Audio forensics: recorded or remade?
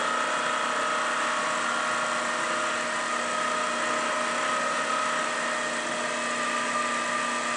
recorded